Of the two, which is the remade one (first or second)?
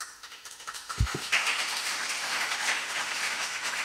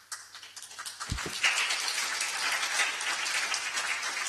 first